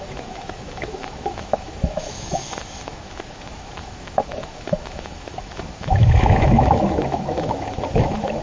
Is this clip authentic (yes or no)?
no